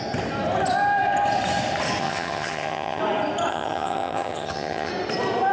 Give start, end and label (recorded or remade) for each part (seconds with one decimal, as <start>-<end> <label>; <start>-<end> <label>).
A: 0.0-2.0 recorded; 2.0-3.0 remade; 3.0-3.5 recorded; 3.5-4.9 remade; 4.9-5.5 recorded